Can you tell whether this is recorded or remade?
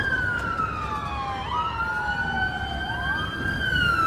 recorded